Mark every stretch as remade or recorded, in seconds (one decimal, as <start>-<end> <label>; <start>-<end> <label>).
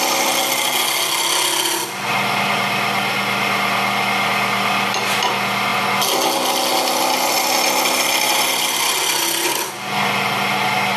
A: 0.0-11.0 recorded